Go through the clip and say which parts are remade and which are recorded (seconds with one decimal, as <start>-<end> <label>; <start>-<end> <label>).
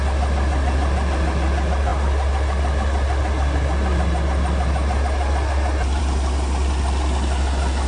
0.0-7.9 recorded